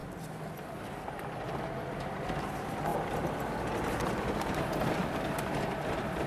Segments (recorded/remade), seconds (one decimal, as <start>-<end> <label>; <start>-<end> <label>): 0.0-6.3 recorded